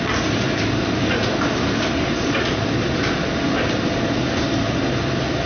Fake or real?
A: real